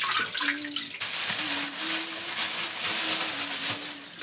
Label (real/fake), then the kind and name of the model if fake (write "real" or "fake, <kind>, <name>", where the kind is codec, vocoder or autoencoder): real